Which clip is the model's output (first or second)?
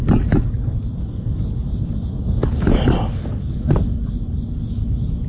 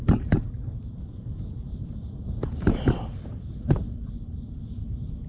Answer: second